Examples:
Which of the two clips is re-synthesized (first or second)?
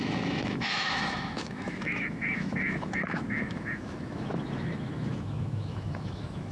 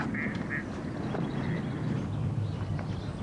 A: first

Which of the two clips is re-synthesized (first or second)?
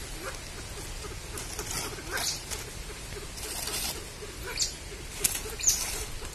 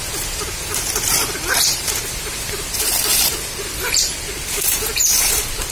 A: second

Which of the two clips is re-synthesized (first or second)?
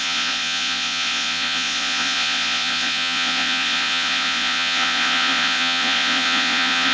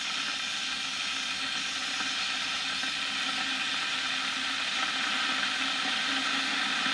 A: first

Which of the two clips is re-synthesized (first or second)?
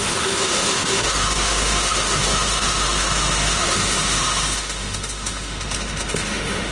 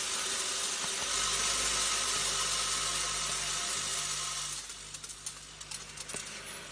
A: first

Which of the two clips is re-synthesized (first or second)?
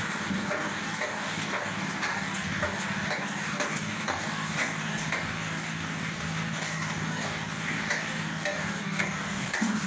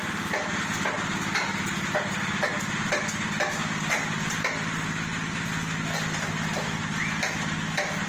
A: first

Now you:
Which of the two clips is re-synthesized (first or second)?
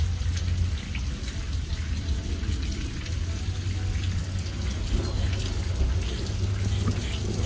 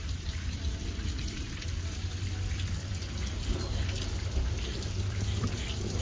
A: second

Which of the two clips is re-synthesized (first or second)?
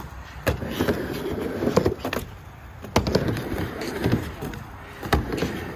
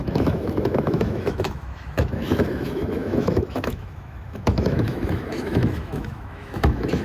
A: second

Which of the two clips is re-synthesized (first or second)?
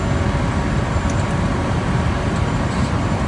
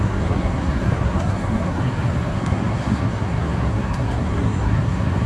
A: second